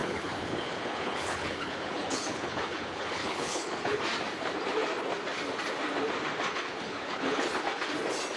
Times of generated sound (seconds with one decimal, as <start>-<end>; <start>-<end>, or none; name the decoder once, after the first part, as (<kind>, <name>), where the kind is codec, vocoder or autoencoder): 0.0-4.0 (codec, HILCodec); 6.5-7.6